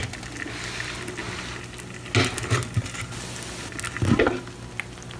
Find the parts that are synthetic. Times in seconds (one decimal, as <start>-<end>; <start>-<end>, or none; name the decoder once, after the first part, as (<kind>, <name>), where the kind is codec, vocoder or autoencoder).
none